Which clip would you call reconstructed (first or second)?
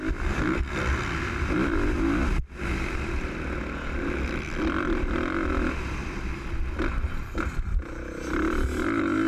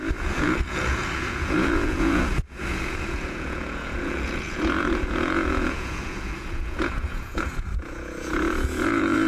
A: second